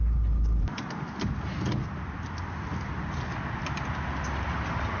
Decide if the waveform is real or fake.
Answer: real